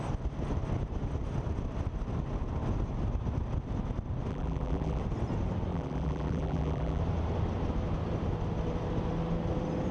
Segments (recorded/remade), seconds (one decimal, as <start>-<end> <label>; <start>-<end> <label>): 0.0-4.3 recorded; 4.3-5.0 remade; 5.0-5.7 recorded; 5.7-7.0 remade; 7.0-9.9 recorded

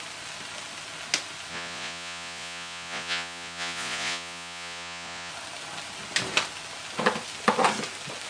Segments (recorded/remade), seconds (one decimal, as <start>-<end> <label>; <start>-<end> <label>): 0.0-1.5 recorded; 1.5-5.3 remade; 5.3-8.3 recorded

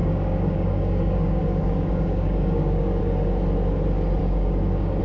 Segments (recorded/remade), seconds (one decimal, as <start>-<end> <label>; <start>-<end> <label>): 0.0-3.0 remade; 3.0-4.2 recorded; 4.2-5.0 remade

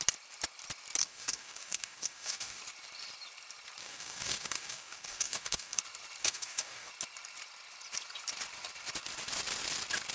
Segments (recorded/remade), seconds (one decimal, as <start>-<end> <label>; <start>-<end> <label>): 0.0-1.0 recorded; 1.0-2.6 remade; 2.6-3.8 recorded; 3.8-5.8 remade; 5.8-6.2 recorded; 6.2-6.9 remade; 6.9-10.1 recorded

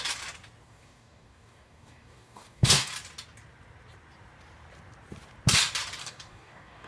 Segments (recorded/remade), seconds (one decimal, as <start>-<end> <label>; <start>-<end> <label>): 0.0-0.6 recorded; 0.6-2.9 remade; 2.9-6.0 recorded; 6.0-6.9 remade